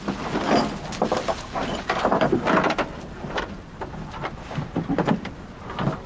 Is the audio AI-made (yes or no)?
no